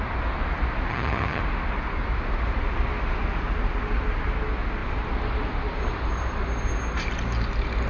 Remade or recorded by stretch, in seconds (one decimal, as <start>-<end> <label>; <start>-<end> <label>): 0.0-0.9 recorded; 0.9-1.4 remade; 1.4-7.9 recorded